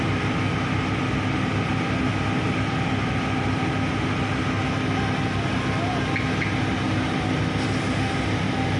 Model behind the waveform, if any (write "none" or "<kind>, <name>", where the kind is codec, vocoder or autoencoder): none